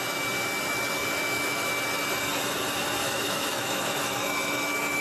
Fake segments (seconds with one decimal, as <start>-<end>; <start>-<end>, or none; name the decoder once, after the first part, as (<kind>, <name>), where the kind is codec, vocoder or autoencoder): 1.0-1.7 (autoencoder, DAC-VAE); 3.0-5.0